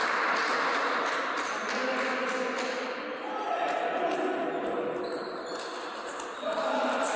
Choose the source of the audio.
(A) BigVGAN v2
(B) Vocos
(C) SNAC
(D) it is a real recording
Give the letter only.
D